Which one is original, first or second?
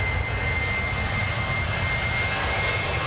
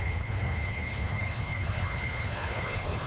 first